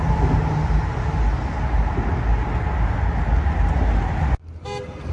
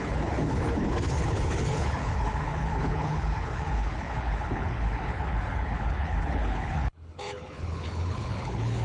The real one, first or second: first